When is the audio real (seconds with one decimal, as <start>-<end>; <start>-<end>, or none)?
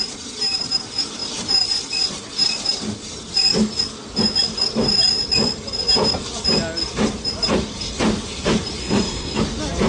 0.0-8.8; 9.4-9.9